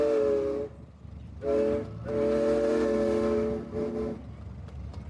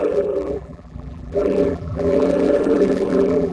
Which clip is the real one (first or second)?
first